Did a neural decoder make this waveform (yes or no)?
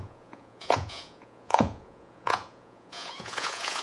yes